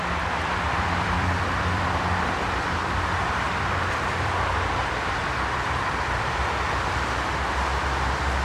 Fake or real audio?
fake